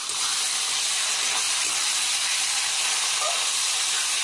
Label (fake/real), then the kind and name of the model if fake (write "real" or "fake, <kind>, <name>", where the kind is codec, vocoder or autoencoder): real